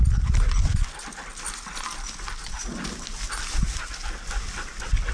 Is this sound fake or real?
real